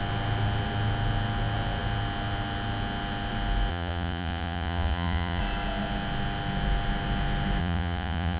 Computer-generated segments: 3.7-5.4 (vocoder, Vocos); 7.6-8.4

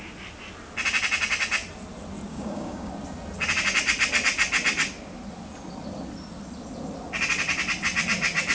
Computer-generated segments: 2.3-2.9 (codec, DAC)

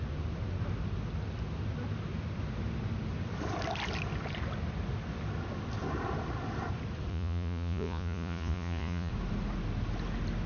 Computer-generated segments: 7.1-9.1 (vocoder, Vocos)

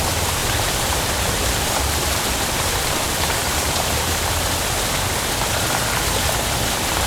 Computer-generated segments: 0.4-4.3 (vocoder, BigVGAN v2)